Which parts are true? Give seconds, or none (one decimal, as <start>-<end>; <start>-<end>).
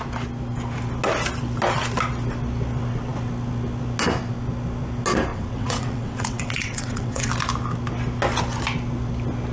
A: 0.0-5.3; 7.3-9.5